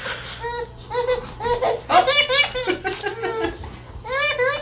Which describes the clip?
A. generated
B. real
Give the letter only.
B